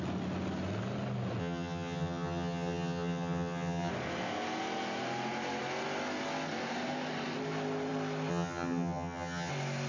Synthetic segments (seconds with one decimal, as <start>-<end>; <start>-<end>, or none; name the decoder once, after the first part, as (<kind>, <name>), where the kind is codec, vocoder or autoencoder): 1.4-3.9 (vocoder, HiFi-GAN); 8.3-9.5